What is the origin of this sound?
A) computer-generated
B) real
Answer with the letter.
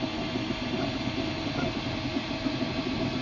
B